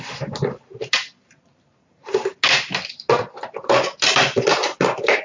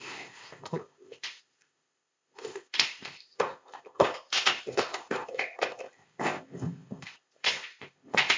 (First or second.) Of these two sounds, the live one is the first